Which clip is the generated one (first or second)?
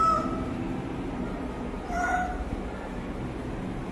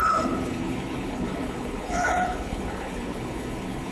second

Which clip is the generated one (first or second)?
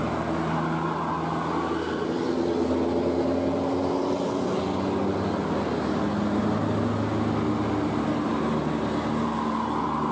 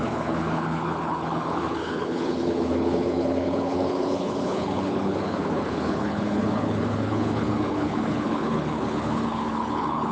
second